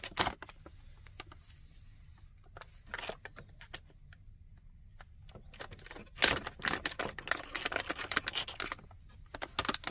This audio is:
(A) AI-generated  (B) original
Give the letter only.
B